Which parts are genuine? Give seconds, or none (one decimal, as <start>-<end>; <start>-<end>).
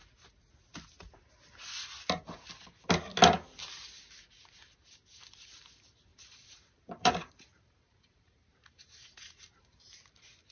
0.0-6.1; 9.9-10.5